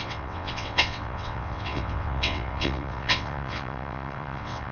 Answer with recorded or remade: remade